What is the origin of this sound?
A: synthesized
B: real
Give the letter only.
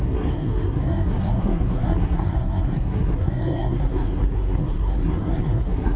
A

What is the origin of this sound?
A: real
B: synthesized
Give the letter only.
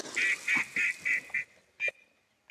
A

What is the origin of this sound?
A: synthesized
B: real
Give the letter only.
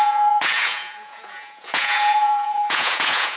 A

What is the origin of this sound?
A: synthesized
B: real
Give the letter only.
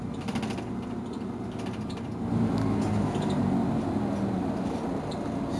B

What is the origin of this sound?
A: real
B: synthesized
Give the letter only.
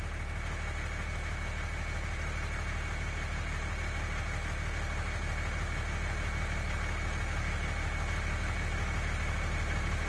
A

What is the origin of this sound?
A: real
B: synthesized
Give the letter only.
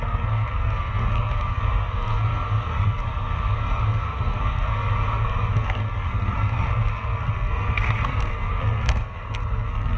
B